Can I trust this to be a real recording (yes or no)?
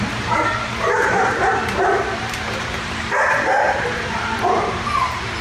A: no